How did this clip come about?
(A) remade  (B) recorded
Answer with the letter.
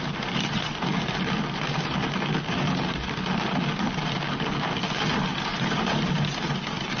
B